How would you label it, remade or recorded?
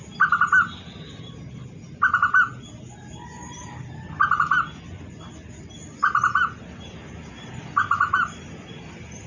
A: recorded